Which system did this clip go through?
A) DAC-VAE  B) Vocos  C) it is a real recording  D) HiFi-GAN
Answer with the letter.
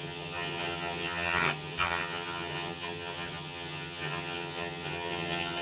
D